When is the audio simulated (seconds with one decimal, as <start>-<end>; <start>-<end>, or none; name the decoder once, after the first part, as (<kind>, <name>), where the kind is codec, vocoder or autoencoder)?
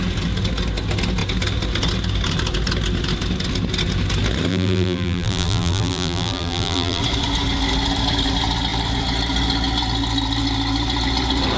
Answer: 4.5-7.0 (vocoder, BigVGAN v2)